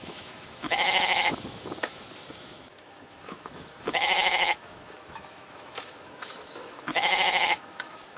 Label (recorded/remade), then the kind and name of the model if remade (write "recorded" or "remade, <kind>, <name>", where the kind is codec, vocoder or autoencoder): remade, autoencoder, DAC-VAE